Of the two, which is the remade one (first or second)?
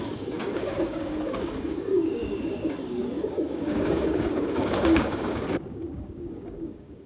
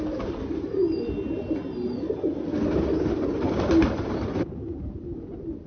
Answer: first